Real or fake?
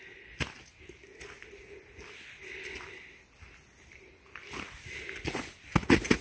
real